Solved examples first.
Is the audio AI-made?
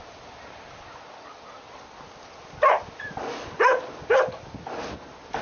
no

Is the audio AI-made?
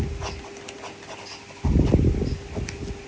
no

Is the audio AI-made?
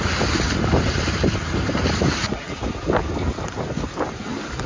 no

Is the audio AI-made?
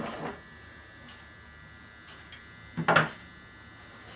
no